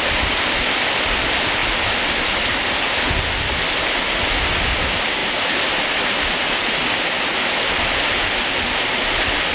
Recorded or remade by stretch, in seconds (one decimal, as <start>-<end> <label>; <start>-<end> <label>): 0.0-9.5 recorded